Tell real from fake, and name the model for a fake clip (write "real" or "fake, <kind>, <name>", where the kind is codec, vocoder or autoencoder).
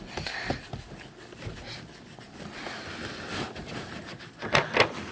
real